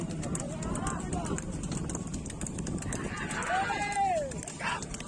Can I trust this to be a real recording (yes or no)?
yes